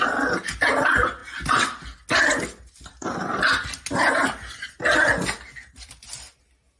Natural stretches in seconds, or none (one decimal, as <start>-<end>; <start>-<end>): 0.0-6.8